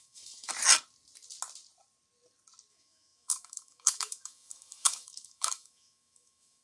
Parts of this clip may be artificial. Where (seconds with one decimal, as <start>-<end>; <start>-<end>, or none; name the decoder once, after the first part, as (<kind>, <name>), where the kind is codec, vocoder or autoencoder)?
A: 0.0-0.5 (autoencoder, DAC-VAE); 2.7-6.6